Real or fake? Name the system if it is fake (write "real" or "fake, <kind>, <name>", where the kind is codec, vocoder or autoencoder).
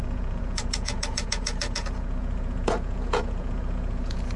fake, vocoder, Vocos